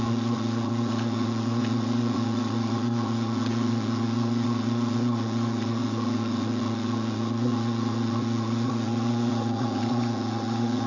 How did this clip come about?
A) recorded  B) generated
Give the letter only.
B